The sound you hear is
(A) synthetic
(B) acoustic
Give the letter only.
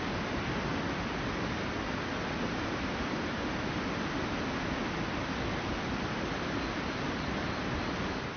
B